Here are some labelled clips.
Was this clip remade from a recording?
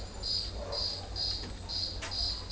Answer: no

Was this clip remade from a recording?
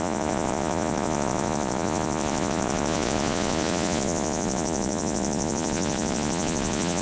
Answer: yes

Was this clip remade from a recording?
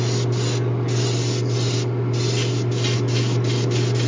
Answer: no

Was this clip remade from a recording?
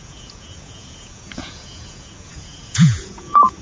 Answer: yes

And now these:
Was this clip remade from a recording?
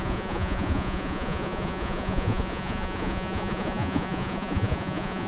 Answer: yes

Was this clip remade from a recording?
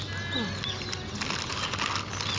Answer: no